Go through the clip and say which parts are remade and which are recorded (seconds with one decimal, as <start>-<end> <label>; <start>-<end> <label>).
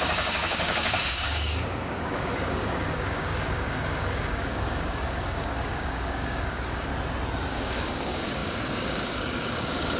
0.0-6.9 remade; 6.9-7.5 recorded; 7.5-10.0 remade